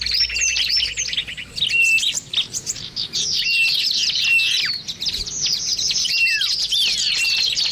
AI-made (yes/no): yes